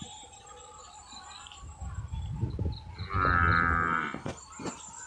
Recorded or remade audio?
recorded